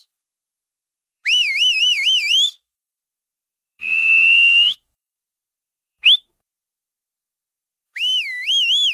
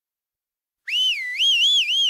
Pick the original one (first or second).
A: second